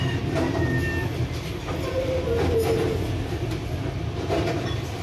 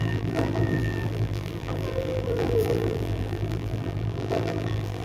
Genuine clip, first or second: first